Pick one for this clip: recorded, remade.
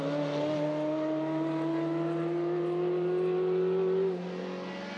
recorded